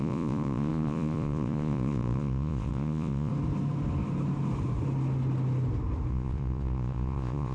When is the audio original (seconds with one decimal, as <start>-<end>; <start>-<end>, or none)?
3.3-6.1